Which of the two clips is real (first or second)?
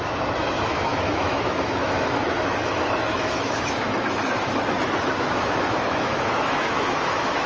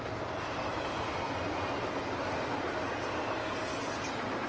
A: second